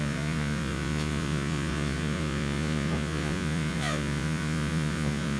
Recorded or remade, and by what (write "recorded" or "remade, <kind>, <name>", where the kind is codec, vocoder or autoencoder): remade, vocoder, Vocos